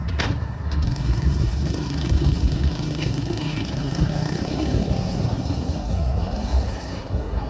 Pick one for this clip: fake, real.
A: fake